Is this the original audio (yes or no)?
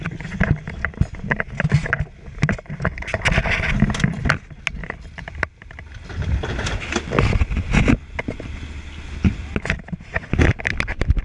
yes